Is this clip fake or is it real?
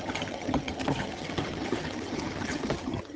fake